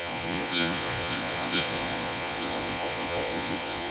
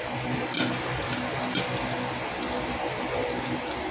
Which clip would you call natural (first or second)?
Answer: second